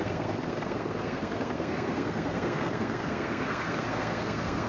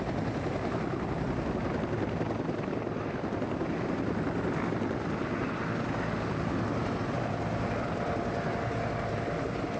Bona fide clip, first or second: second